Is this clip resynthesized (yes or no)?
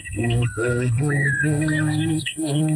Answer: yes